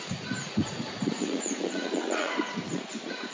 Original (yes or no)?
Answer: no